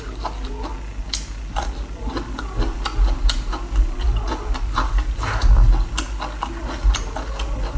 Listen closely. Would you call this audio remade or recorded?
recorded